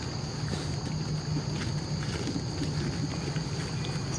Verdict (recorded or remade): recorded